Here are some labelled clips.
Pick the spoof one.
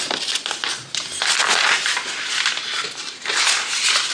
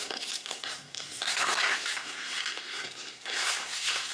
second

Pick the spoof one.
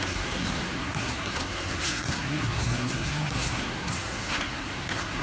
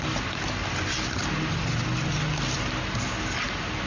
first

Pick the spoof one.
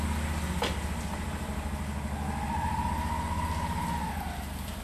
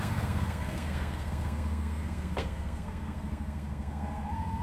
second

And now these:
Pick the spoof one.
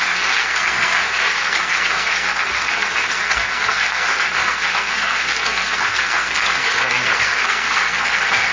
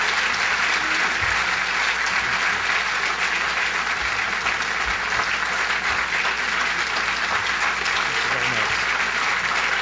first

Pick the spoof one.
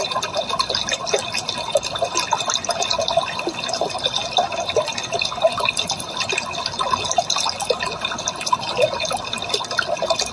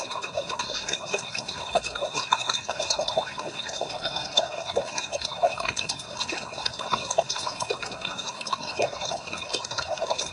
second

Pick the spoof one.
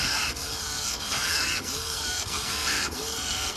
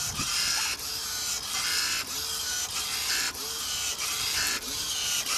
first